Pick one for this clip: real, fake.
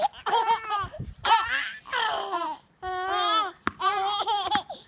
real